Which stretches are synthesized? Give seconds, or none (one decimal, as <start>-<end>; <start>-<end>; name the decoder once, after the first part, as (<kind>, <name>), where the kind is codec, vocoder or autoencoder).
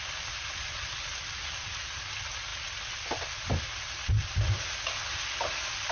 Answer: none